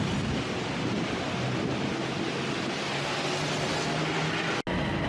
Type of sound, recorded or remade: recorded